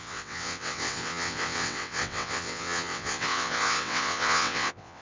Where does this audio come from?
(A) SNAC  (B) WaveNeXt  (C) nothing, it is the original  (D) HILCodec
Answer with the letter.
B